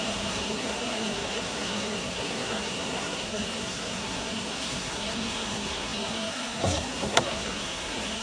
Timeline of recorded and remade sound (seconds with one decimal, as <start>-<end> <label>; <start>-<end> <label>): 0.0-8.2 remade